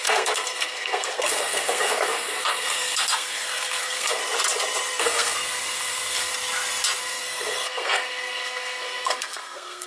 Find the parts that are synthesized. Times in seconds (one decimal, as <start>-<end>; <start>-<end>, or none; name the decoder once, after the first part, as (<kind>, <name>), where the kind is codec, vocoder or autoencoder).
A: 0.0-4.2 (codec, SNAC); 5.0-6.3; 7.0-9.9